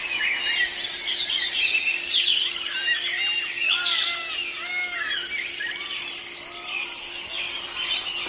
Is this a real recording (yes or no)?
yes